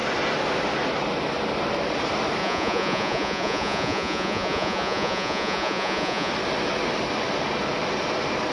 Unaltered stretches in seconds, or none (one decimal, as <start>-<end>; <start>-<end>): 0.0-2.4; 6.3-8.5